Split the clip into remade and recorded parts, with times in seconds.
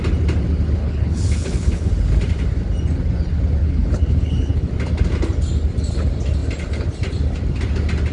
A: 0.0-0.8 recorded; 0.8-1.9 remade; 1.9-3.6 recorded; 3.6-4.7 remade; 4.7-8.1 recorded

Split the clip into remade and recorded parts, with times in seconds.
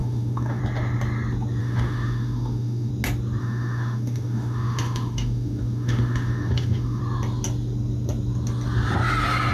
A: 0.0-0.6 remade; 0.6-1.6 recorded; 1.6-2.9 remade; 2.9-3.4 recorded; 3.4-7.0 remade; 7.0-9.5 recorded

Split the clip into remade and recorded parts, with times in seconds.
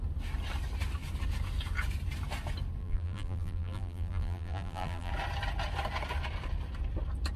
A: 0.0-2.8 recorded; 2.8-5.1 remade; 5.1-7.4 recorded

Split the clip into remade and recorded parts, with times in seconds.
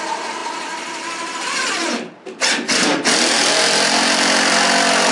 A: 0.0-5.1 remade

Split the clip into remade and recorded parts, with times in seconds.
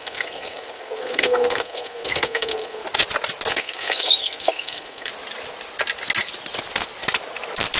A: 0.0-2.8 remade; 2.8-3.5 recorded; 3.5-5.1 remade; 5.1-7.8 recorded